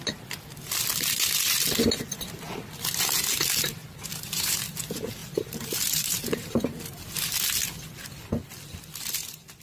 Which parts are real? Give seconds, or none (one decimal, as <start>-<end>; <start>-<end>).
0.0-3.8; 4.5-5.2; 6.8-9.6